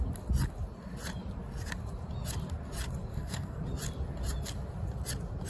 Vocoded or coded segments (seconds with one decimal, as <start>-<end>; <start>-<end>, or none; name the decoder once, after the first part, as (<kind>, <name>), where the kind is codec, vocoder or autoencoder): 3.1-3.6 (codec, SNAC)